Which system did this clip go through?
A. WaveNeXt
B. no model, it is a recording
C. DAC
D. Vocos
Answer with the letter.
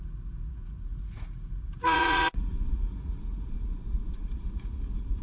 D